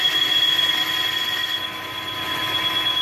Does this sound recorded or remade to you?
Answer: recorded